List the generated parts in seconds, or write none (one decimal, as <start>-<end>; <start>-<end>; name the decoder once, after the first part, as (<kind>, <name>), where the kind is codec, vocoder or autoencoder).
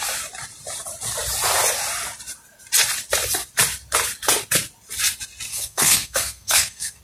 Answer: 5.5-7.0 (codec, SNAC)